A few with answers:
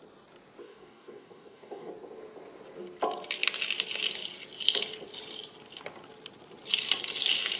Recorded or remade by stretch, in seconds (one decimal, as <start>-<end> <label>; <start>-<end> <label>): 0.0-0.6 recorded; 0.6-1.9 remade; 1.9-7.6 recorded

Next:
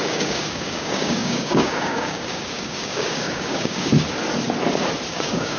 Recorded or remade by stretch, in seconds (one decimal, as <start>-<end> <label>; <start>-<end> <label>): 0.0-3.9 remade; 3.9-5.1 recorded; 5.1-5.6 remade

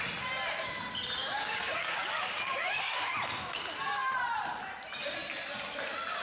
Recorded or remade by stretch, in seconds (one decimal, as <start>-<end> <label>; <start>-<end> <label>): 0.0-1.2 recorded; 1.2-3.1 remade; 3.1-6.2 recorded

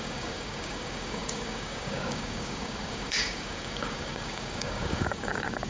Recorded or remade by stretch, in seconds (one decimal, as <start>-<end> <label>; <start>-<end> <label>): 0.0-5.7 remade

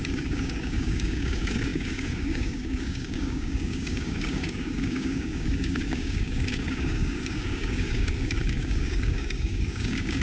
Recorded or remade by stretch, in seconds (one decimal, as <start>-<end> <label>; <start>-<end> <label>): 0.0-10.2 remade

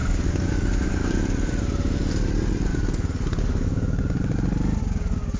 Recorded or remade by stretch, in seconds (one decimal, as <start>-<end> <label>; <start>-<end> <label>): 0.0-1.2 remade; 1.2-2.7 recorded; 2.7-4.0 remade; 4.0-4.8 recorded; 4.8-5.4 remade

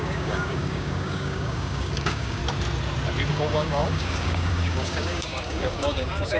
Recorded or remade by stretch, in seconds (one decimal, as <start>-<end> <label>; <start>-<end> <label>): 0.0-2.4 remade; 2.4-3.3 recorded; 3.3-6.4 remade